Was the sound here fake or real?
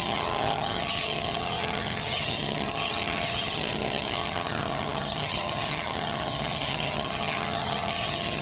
fake